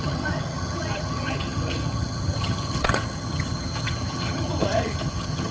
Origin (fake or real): fake